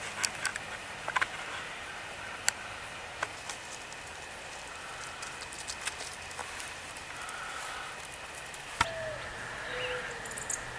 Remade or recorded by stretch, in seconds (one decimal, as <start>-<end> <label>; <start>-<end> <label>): 0.0-0.5 recorded; 0.5-3.5 remade; 3.5-6.4 recorded; 6.4-6.9 remade; 6.9-10.8 recorded